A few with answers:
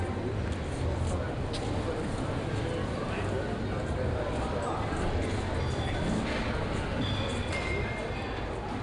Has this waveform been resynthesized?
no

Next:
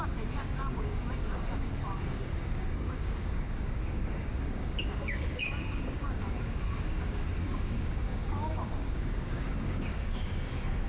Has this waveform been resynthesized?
yes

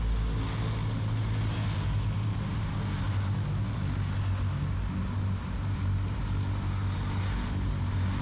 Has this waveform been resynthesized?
no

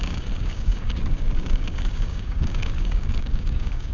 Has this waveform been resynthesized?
yes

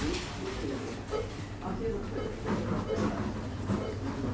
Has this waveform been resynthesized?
no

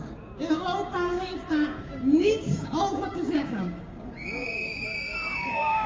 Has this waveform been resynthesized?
yes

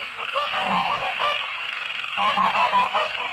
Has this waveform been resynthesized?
yes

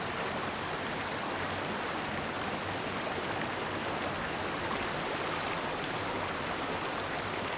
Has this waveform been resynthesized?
no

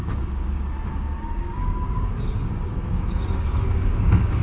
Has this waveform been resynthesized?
yes